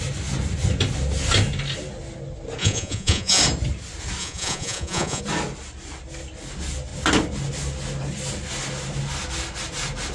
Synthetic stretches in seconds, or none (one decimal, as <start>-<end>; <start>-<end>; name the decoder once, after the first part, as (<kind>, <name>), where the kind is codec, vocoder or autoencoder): 2.6-3.4 (vocoder, Vocos); 4.2-5.2